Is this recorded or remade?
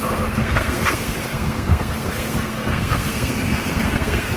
remade